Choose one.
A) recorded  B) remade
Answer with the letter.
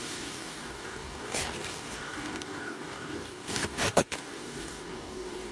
B